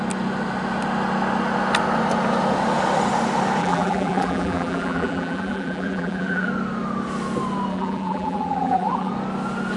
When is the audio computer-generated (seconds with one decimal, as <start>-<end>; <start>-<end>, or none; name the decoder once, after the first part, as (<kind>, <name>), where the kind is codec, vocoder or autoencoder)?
3.6-6.5 (vocoder, BigVGAN v2); 7.7-9.1